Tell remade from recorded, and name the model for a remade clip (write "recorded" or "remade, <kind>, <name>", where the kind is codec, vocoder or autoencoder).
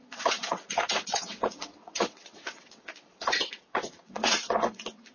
remade, vocoder, WaveNeXt